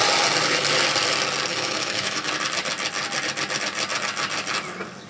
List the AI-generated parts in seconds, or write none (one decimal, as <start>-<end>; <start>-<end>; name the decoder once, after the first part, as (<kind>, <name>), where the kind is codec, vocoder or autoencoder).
1.5-2.3 (autoencoder, DAC-VAE)